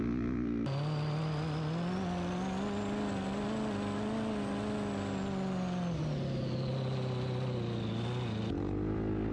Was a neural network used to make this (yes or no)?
no